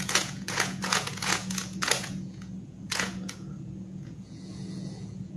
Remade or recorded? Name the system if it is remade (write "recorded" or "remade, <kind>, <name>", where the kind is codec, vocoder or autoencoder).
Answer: remade, vocoder, Vocos